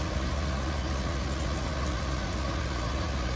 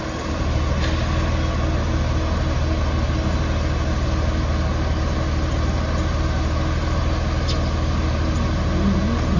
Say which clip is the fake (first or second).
first